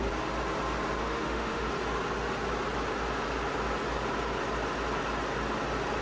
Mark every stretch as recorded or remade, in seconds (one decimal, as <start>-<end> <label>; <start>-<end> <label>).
0.0-1.0 recorded; 1.0-1.7 remade; 1.7-6.0 recorded